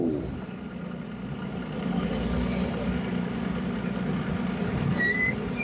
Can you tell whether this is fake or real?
real